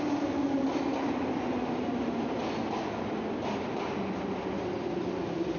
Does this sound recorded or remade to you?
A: recorded